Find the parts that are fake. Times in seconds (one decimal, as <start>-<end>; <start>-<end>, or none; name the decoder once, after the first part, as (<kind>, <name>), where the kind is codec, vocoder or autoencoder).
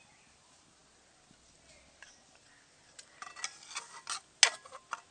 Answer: none